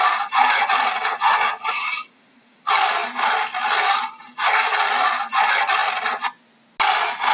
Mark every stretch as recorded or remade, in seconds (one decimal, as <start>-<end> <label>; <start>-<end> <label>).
0.0-0.4 recorded; 0.4-2.6 remade; 2.6-7.3 recorded